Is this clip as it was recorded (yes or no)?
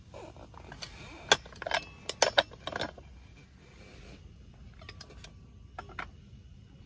yes